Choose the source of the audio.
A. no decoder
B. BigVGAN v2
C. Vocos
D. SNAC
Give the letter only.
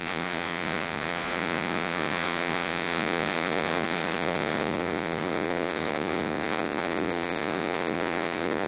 C